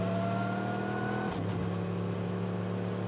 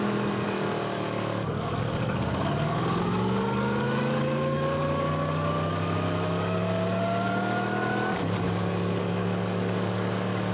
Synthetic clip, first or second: second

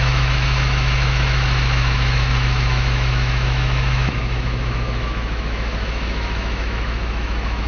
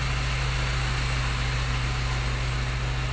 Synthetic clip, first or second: first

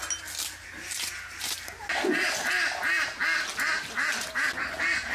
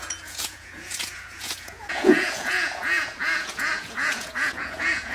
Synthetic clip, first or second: second